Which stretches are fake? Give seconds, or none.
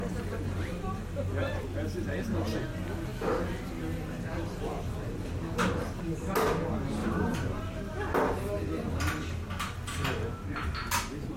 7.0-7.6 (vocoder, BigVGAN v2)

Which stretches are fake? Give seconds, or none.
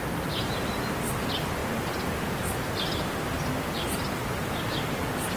none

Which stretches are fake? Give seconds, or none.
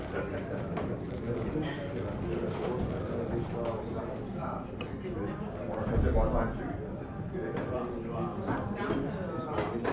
4.4-5.9 (vocoder, BigVGAN v2); 7.4-7.9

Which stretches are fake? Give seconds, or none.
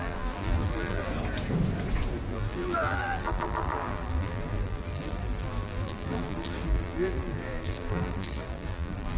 0.0-1.1 (vocoder, BigVGAN v2); 2.3-9.2